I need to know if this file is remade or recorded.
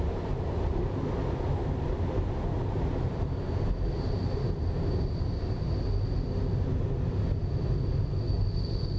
recorded